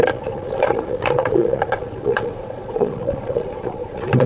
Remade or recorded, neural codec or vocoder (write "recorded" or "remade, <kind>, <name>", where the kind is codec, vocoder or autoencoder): remade, vocoder, Vocos